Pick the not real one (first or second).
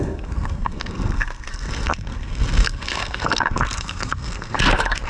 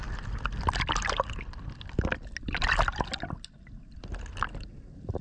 first